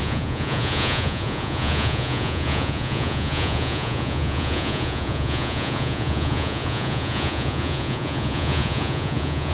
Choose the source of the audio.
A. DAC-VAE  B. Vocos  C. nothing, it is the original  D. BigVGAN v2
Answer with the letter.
B